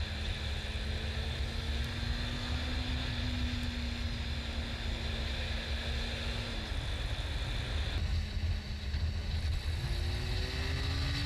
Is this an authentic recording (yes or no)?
yes